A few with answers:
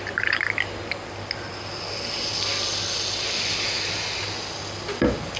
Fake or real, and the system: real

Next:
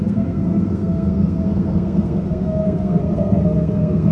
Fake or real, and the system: fake, codec, SNAC